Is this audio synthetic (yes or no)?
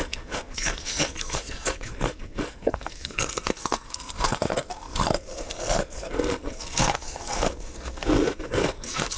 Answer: yes